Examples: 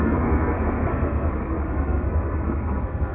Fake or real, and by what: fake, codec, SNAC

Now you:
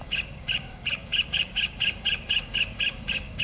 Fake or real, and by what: fake, codec, DAC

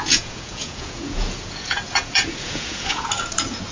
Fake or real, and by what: fake, vocoder, Vocos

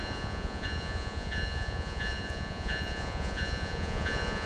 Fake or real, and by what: fake, vocoder, Vocos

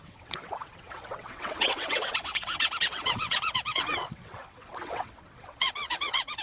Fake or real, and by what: fake, vocoder, WaveNeXt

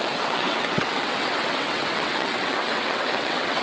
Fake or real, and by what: fake, vocoder, WaveNeXt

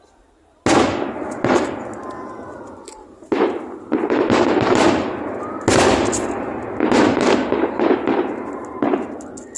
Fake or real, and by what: real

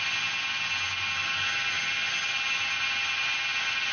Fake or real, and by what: real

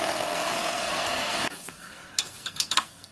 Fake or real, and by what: fake, codec, SNAC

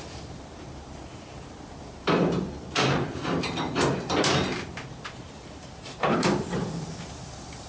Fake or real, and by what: fake, vocoder, BigVGAN v2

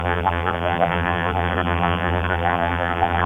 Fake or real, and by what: fake, vocoder, BigVGAN v2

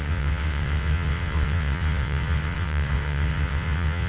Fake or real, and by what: fake, vocoder, WaveNeXt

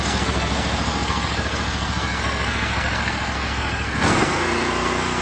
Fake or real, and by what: fake, codec, SNAC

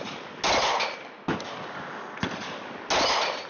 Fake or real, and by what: real